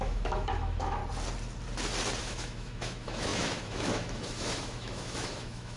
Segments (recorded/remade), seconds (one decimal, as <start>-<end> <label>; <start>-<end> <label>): 0.0-1.0 remade; 1.0-2.2 recorded; 2.2-5.8 remade